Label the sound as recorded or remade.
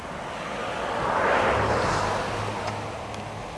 recorded